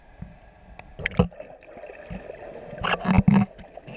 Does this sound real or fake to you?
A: real